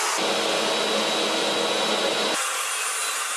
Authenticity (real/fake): real